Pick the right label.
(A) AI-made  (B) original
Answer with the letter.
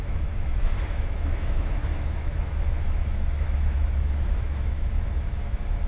A